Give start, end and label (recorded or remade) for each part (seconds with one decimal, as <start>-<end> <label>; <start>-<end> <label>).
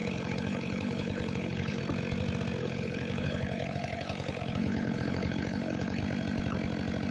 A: 0.0-1.8 remade; 1.8-2.6 recorded; 2.6-6.0 remade; 6.0-7.1 recorded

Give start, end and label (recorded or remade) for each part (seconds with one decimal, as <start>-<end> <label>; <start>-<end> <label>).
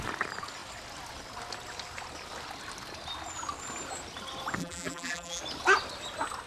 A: 0.0-4.6 recorded; 4.6-5.4 remade; 5.4-6.5 recorded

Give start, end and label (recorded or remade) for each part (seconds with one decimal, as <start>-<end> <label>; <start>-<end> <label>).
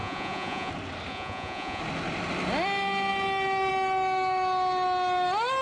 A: 0.0-0.7 remade; 0.7-1.1 recorded; 1.1-1.8 remade; 1.8-5.6 recorded